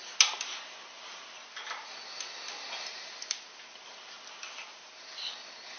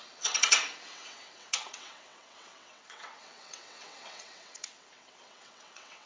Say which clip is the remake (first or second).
second